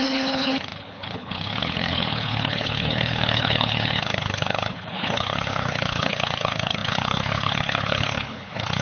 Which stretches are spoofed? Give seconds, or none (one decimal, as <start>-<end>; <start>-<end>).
0.0-8.8